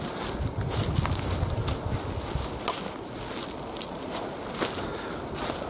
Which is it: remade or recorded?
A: recorded